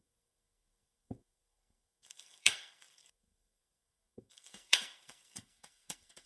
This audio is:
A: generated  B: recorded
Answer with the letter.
A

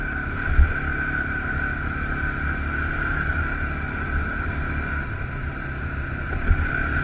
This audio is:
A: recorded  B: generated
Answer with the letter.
A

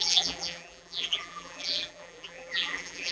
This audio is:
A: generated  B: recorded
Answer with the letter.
A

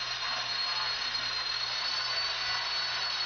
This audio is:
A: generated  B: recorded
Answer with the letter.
B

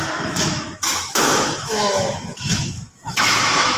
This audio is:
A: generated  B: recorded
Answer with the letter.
A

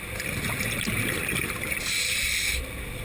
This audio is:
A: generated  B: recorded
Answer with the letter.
B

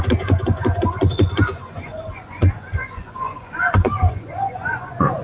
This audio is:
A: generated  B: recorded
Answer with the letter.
A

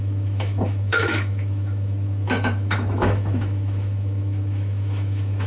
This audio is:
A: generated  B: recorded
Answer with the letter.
A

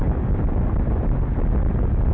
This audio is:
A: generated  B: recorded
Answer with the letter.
B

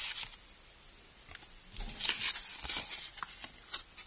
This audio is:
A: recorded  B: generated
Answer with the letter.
A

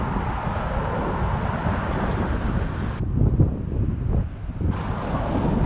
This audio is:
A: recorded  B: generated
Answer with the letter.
A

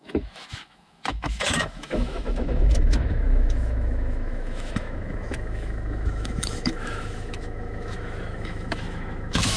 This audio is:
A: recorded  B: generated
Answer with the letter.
B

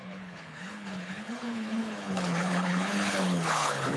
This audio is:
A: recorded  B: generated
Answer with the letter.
B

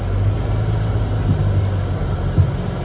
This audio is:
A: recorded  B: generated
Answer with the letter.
A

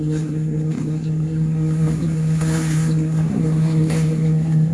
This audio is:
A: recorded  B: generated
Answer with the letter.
B